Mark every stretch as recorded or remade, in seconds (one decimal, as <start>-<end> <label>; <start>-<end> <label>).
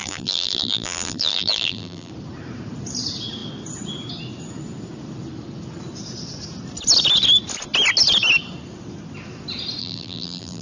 0.0-2.1 remade; 2.1-9.8 recorded; 9.8-10.6 remade